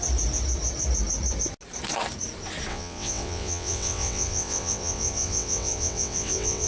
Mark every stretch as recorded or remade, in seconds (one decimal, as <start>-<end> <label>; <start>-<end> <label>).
0.0-2.7 recorded; 2.7-6.7 remade